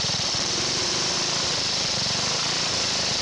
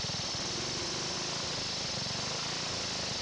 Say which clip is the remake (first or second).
first